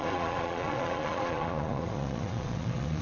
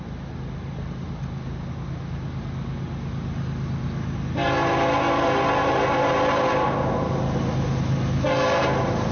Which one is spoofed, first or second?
first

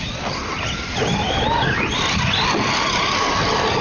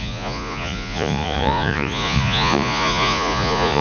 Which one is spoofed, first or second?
second